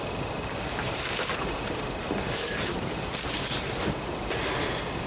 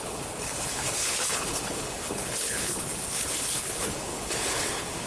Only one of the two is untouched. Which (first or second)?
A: first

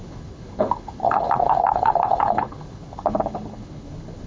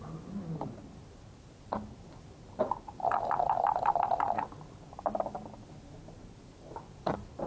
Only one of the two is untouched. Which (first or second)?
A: second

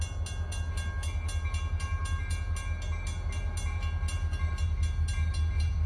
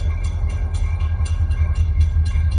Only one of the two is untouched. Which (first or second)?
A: first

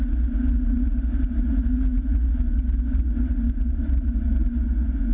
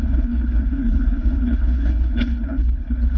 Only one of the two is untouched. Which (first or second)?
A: first